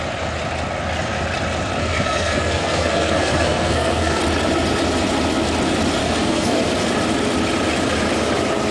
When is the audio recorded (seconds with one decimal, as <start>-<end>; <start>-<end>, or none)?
0.0-1.8; 4.2-6.0; 6.6-8.7